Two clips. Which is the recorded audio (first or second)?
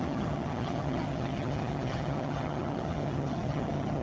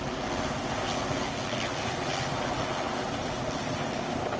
second